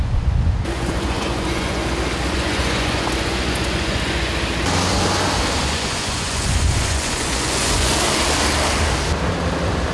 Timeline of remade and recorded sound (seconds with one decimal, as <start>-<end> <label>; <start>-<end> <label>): 0.0-1.8 remade; 1.8-2.3 recorded; 2.3-4.3 remade; 4.3-5.6 recorded; 5.6-7.9 remade; 7.9-9.9 recorded